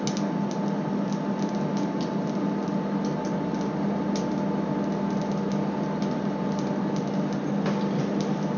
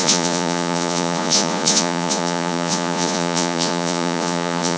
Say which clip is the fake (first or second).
second